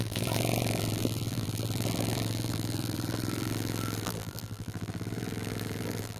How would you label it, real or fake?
fake